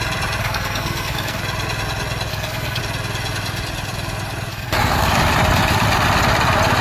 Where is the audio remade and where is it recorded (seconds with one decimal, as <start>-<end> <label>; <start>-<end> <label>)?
0.0-0.4 recorded; 0.4-1.4 remade; 1.4-2.3 recorded; 2.3-2.8 remade; 2.8-4.5 recorded; 4.5-5.1 remade; 5.1-6.8 recorded